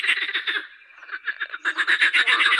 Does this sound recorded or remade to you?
recorded